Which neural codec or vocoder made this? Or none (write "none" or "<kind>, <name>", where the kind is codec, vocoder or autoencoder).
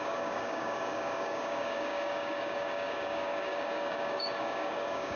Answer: codec, DAC